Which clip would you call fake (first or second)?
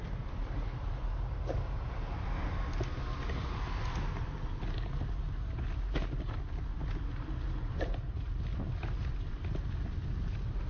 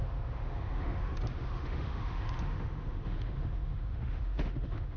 second